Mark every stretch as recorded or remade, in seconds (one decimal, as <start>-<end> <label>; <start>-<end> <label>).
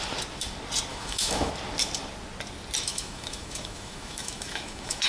0.0-0.9 recorded; 0.9-1.5 remade; 1.5-2.9 recorded; 2.9-5.1 remade